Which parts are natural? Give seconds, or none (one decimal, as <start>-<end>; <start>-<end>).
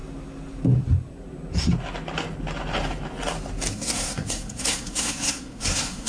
0.0-3.7